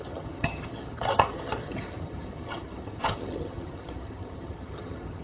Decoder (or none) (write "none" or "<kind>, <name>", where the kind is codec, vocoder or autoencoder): vocoder, HiFi-GAN